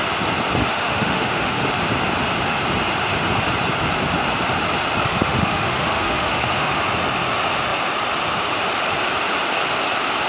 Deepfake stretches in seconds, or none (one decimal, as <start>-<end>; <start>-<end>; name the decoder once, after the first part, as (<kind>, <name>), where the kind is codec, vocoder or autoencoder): 0.6-1.6 (autoencoder, DAC-VAE); 5.1-6.8